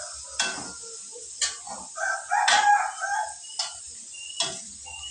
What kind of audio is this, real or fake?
real